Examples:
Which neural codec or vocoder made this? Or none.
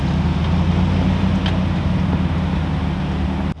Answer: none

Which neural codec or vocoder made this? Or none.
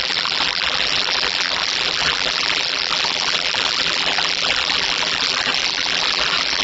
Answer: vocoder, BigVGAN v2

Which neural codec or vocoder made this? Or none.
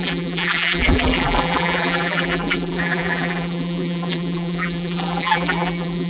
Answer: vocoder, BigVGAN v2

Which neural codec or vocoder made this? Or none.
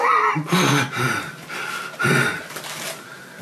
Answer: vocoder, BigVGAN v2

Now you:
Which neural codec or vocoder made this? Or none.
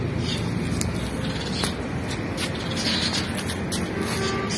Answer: none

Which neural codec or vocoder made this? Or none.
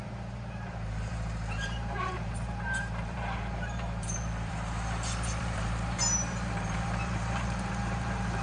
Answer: vocoder, BigVGAN v2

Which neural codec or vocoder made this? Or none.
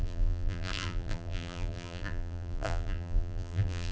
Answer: vocoder, BigVGAN v2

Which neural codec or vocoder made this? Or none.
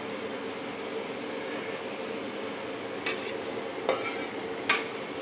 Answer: none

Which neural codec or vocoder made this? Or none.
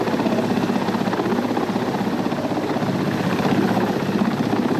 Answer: none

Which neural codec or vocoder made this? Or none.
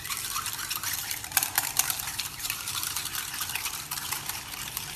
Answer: vocoder, BigVGAN v2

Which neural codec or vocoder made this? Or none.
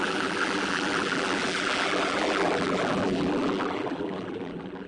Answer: vocoder, BigVGAN v2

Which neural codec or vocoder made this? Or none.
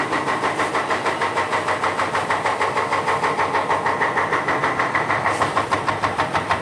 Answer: none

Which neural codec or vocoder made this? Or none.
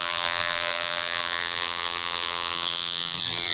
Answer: vocoder, BigVGAN v2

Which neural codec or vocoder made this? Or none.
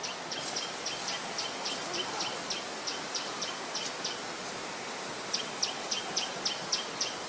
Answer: vocoder, BigVGAN v2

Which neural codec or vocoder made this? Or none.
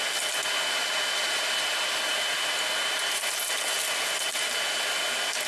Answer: none